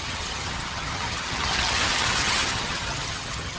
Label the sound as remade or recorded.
remade